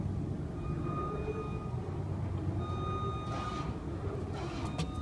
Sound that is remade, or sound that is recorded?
recorded